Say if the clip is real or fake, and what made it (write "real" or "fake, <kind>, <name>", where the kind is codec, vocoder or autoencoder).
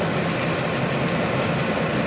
real